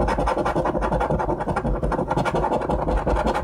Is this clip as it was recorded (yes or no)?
yes